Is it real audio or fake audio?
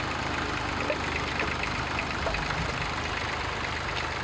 real